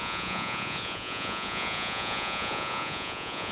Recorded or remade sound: remade